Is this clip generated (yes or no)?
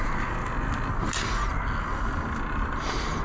no